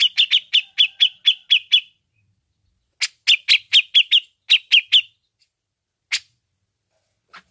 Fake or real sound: real